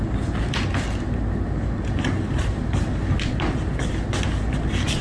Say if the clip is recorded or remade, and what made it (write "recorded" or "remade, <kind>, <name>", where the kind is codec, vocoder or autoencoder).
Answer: recorded